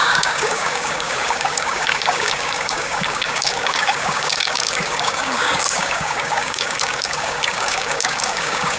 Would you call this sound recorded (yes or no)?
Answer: no